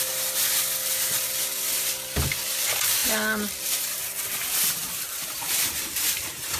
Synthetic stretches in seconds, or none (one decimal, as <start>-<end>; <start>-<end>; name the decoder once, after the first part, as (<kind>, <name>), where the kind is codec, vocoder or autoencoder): 4.8-6.6 (vocoder, BigVGAN v2)